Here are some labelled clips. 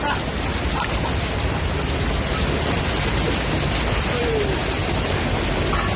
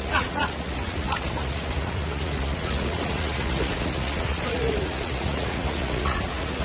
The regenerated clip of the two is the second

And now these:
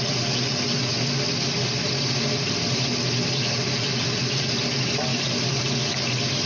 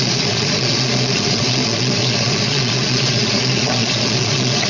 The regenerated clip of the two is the second